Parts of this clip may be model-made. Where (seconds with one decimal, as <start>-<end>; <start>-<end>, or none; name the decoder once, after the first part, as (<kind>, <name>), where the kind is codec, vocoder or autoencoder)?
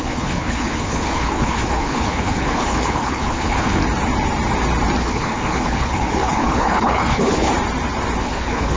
0.0-3.8 (codec, HILCodec); 5.0-7.5; 8.2-8.8